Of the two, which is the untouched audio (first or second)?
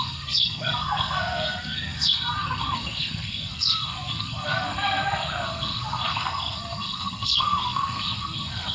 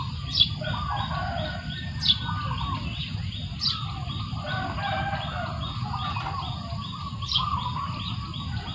second